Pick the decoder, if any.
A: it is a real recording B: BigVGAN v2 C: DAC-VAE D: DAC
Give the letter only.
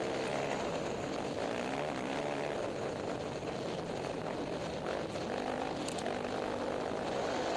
A